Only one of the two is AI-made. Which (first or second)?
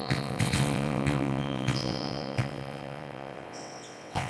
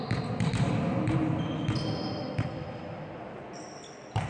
first